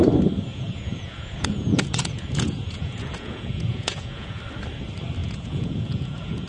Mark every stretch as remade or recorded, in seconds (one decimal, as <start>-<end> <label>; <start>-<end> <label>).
0.0-0.5 recorded; 0.5-4.4 remade; 4.4-5.2 recorded; 5.2-6.5 remade